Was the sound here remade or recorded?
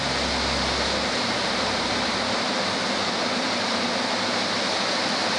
recorded